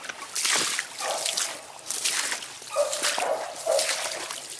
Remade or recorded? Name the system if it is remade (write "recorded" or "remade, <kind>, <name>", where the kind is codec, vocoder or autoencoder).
recorded